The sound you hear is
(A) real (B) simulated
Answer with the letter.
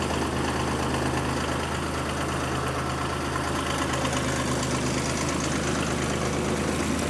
A